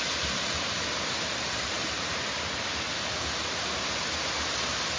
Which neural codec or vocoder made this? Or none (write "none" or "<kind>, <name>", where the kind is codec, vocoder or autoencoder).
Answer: none